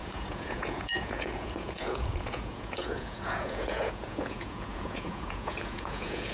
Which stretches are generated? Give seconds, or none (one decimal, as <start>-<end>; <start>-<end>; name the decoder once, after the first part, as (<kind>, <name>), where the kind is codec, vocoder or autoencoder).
0.0-6.3 (vocoder, Vocos)